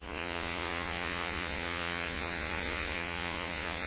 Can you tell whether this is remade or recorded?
remade